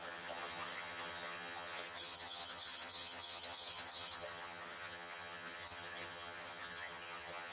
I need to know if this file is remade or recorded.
remade